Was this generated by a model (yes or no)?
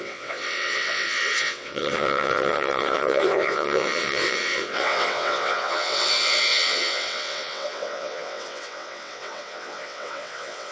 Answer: yes